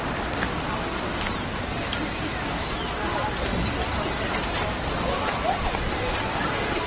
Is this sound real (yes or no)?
yes